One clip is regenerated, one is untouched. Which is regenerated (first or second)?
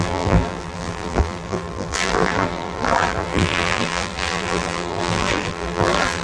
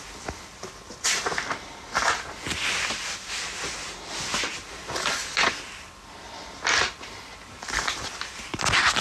first